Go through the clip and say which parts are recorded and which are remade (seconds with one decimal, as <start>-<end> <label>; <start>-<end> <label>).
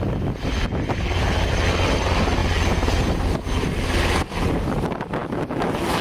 0.0-5.2 recorded; 5.2-6.0 remade